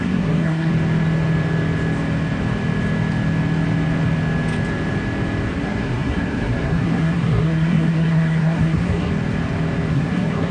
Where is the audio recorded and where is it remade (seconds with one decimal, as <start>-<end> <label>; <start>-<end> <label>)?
0.0-0.7 remade; 0.7-5.5 recorded; 5.5-9.1 remade; 9.1-9.9 recorded; 9.9-10.5 remade

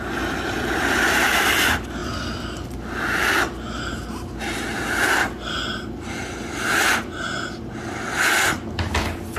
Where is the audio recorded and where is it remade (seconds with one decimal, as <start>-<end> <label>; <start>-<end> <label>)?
0.0-9.4 recorded

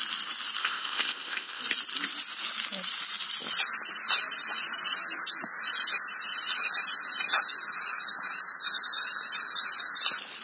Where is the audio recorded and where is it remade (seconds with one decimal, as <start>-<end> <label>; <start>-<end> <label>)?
0.0-0.6 recorded; 0.6-1.6 remade; 1.6-10.4 recorded

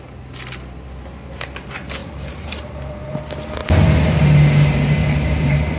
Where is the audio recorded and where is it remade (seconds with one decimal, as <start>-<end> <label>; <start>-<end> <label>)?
0.0-2.0 recorded; 2.0-3.1 remade; 3.1-3.6 recorded; 3.6-4.2 remade; 4.2-5.0 recorded; 5.0-5.8 remade